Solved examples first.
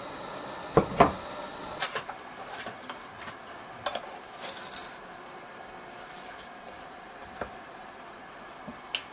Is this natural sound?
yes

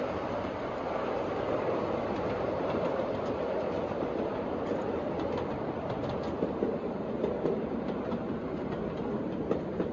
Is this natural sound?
no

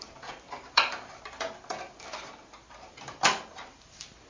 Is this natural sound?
no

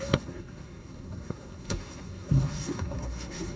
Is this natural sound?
no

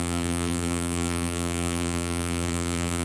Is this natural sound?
no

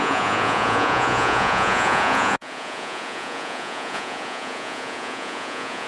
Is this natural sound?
no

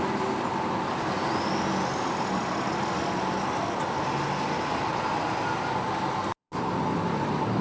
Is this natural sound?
yes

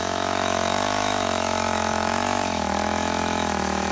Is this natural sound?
no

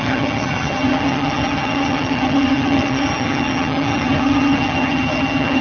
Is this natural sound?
no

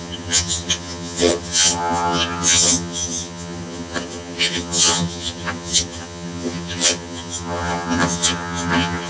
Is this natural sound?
no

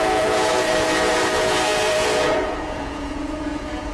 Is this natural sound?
no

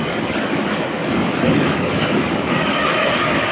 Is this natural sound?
no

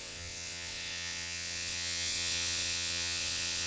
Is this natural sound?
no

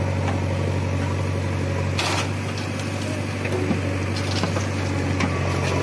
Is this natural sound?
yes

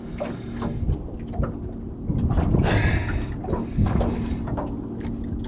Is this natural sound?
yes